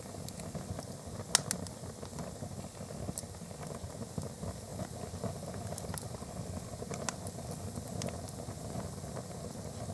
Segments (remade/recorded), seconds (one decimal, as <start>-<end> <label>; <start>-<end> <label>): 0.0-9.9 recorded